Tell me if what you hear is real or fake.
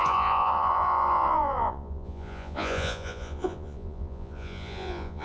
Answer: fake